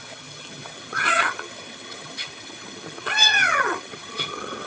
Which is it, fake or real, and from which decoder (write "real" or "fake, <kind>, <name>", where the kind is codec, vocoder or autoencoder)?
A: fake, vocoder, HiFi-GAN